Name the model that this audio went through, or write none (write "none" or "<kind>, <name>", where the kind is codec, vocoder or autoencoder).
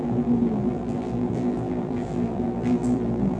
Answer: vocoder, BigVGAN v2